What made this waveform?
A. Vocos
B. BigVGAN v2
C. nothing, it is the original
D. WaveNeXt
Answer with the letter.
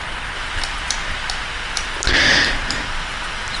C